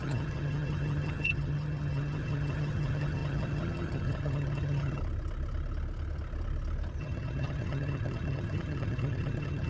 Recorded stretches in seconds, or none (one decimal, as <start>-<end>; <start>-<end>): 5.0-7.0